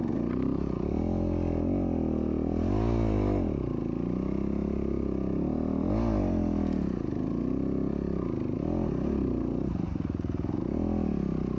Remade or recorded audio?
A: recorded